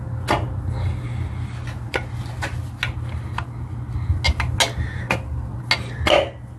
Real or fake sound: real